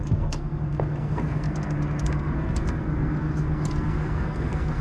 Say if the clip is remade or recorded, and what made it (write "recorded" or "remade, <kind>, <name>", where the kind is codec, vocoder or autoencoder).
remade, codec, SNAC